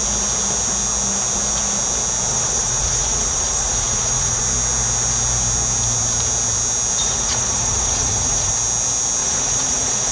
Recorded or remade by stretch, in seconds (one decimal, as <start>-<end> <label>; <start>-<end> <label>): 0.0-2.3 recorded; 2.3-4.4 remade; 4.4-7.0 recorded; 7.0-8.5 remade; 8.5-9.2 recorded; 9.2-10.1 remade